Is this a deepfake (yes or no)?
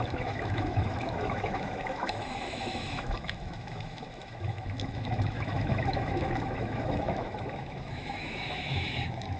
yes